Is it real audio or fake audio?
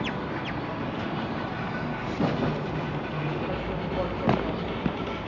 real